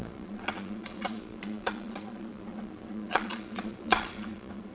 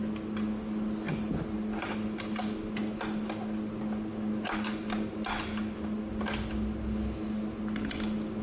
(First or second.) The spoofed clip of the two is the first